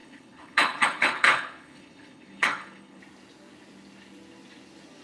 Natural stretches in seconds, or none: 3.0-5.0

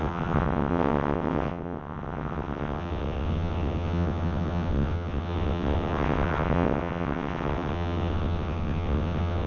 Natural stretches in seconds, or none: none